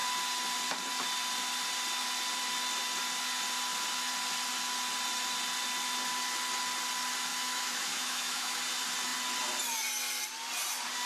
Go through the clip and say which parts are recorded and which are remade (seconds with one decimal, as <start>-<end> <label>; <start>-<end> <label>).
0.0-7.3 recorded; 7.3-8.6 remade; 8.6-11.1 recorded